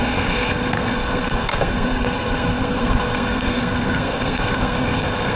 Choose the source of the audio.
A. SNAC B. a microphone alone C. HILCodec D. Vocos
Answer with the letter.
A